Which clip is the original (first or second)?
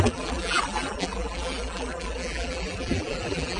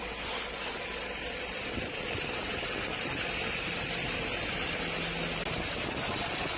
second